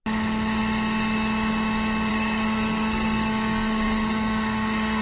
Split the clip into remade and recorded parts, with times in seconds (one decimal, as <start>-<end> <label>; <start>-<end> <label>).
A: 0.0-2.1 recorded; 2.1-5.0 remade